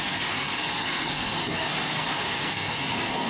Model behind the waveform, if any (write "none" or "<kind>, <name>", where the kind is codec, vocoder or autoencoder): codec, SNAC